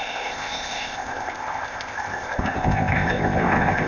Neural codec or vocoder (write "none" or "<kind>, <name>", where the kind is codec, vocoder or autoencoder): codec, ZipCodec